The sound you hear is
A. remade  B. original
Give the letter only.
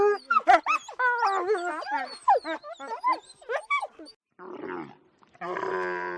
B